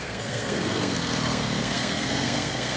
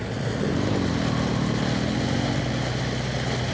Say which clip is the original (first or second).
second